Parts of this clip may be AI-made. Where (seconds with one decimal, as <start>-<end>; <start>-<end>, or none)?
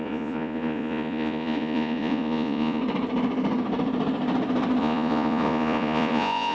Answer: 0.0-2.8; 4.8-6.5